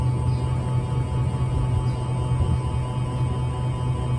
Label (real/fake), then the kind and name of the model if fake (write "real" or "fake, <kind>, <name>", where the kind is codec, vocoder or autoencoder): real